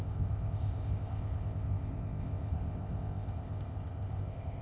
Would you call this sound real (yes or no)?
no